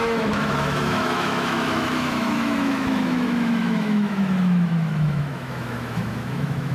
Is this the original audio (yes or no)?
no